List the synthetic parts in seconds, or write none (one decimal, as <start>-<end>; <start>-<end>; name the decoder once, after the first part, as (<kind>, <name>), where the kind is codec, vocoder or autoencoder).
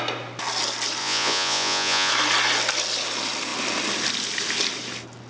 1.0-2.1 (vocoder, Vocos)